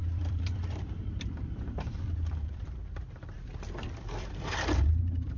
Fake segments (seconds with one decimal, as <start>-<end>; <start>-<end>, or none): 0.0-5.4